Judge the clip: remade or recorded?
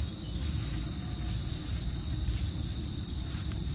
recorded